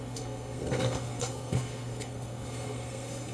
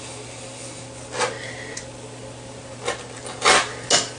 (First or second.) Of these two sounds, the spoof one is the first